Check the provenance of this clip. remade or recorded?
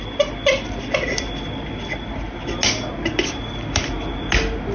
recorded